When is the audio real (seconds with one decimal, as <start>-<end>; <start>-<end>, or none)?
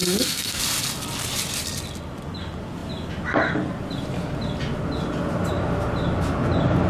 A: 0.6-6.9